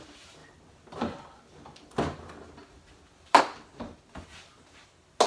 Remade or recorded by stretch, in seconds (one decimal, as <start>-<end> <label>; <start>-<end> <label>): 0.0-5.3 recorded